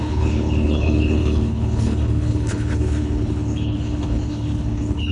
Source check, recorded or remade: remade